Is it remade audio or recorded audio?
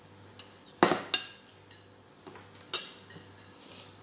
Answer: recorded